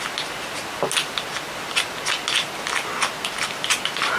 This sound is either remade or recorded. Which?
recorded